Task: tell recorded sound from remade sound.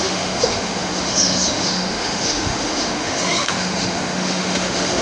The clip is remade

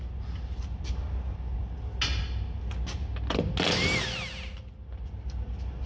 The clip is recorded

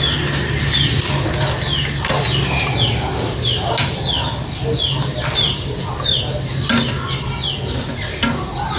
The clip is recorded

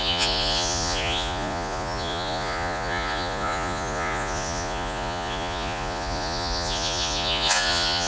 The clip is remade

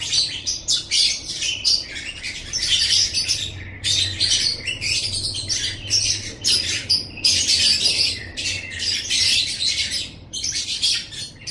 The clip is remade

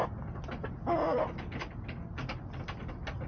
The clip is recorded